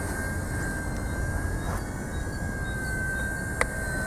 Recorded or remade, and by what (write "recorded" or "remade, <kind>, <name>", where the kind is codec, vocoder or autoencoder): recorded